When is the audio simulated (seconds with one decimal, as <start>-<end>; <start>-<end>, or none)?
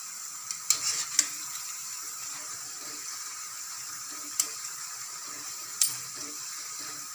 0.8-7.1